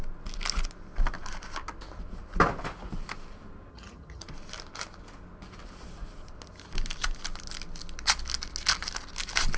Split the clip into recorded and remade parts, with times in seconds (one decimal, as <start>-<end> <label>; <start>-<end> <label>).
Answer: 0.0-3.7 recorded; 3.7-4.2 remade; 4.2-9.6 recorded